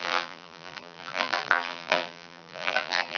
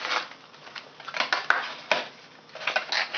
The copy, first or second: first